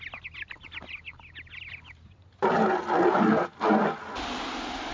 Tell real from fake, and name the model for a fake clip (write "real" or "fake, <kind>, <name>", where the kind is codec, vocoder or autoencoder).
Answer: real